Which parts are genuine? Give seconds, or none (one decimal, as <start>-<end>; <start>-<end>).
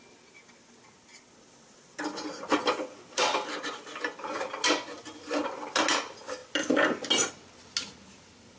0.0-8.6